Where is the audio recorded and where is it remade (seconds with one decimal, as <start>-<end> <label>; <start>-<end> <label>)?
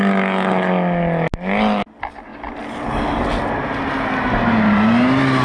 0.0-5.4 recorded